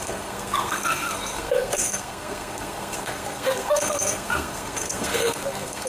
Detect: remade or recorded remade